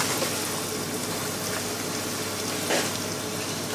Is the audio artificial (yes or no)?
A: no